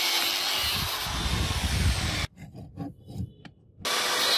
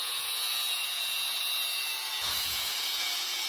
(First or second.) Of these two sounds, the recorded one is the first